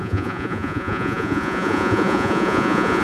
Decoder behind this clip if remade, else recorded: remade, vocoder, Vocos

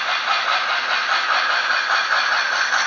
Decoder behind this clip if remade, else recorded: recorded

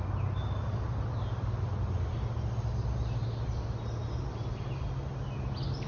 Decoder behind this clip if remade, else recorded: recorded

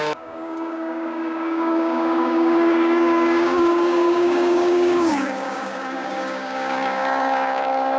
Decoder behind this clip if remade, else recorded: remade, codec, DAC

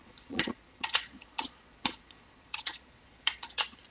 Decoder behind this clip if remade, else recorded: remade, vocoder, Vocos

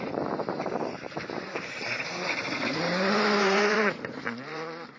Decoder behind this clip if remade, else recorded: remade, vocoder, BigVGAN v2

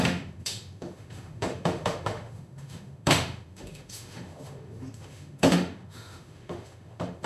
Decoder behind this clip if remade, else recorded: remade, autoencoder, DAC-VAE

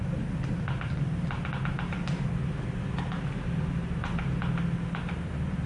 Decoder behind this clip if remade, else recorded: recorded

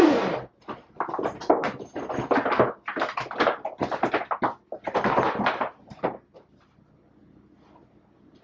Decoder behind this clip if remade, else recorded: recorded